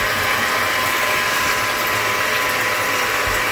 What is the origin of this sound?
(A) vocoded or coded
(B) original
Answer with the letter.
B